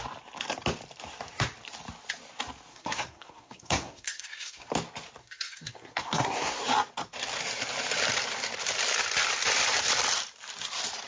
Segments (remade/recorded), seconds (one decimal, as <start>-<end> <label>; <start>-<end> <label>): 0.0-2.7 recorded; 2.7-4.7 remade; 4.7-5.2 recorded; 5.2-6.6 remade; 6.6-11.1 recorded